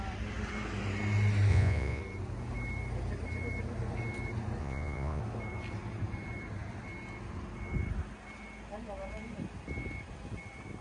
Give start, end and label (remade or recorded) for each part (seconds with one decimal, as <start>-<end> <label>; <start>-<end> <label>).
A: 0.0-1.5 recorded; 1.5-2.0 remade; 2.0-4.6 recorded; 4.6-5.2 remade; 5.2-10.8 recorded